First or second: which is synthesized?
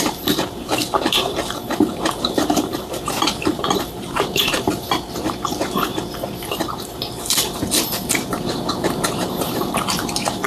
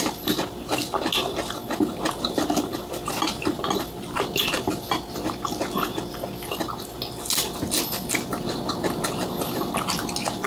first